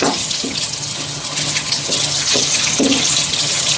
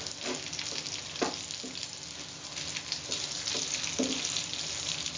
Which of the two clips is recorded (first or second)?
second